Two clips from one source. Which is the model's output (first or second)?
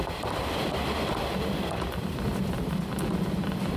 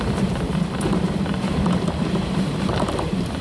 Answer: second